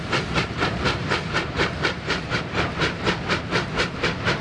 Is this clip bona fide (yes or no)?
no